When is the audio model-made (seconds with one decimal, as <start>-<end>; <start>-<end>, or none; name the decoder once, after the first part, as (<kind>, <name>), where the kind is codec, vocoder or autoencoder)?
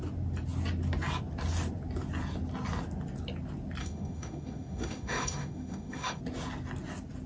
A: 3.8-6.2 (autoencoder, DAC-VAE)